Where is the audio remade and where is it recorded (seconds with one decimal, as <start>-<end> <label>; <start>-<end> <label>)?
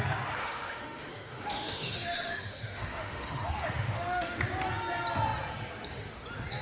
0.0-0.4 recorded; 0.4-4.4 remade; 4.4-6.6 recorded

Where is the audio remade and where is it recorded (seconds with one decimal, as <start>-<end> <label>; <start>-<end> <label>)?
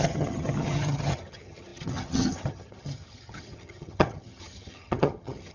0.0-5.5 remade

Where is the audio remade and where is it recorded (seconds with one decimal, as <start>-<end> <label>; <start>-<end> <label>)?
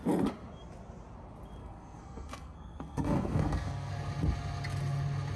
0.0-1.6 recorded; 1.6-3.9 remade; 3.9-5.4 recorded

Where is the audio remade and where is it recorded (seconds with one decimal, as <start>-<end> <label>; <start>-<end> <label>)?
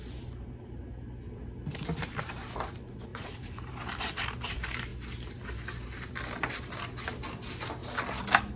0.0-3.1 recorded; 3.1-4.3 remade; 4.3-8.6 recorded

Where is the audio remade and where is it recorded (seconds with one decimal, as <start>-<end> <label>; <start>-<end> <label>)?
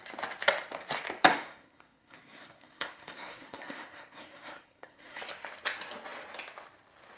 0.0-1.3 recorded; 1.3-5.2 remade; 5.2-7.2 recorded